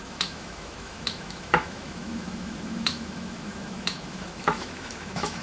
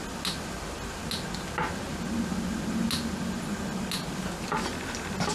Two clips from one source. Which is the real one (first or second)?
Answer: second